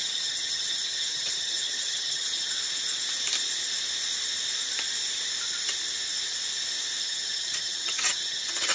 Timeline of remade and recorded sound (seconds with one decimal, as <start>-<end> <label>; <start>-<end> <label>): 0.0-2.5 remade; 2.5-7.0 recorded; 7.0-8.7 remade